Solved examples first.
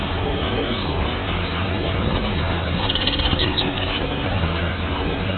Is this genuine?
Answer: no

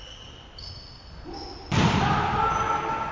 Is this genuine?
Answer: yes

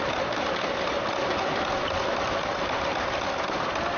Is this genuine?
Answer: yes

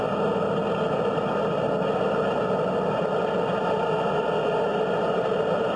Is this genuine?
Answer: yes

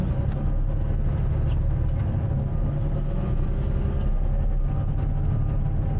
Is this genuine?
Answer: yes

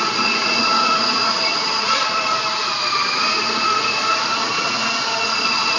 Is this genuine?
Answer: no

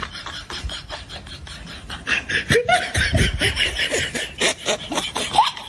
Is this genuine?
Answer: no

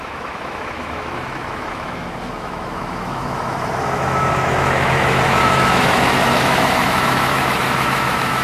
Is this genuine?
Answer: no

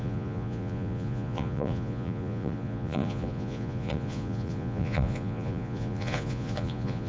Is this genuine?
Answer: no